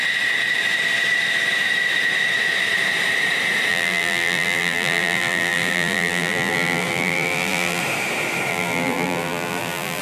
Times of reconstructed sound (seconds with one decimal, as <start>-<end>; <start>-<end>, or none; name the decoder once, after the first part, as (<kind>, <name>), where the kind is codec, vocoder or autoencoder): 3.7-7.8 (vocoder, BigVGAN v2); 8.5-10.0